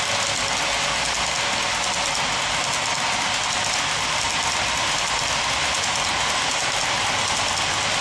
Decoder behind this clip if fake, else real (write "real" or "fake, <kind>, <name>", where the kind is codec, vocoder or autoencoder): real